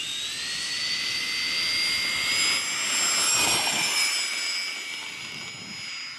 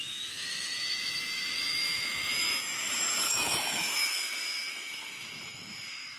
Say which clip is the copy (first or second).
second